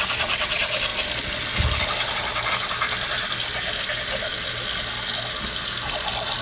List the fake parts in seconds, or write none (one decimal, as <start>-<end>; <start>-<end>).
none